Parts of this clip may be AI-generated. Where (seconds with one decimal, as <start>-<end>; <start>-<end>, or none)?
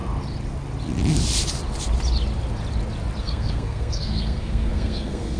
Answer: 3.2-5.4